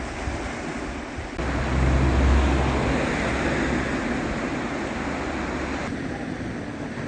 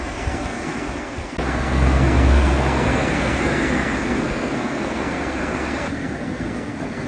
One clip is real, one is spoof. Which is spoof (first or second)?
second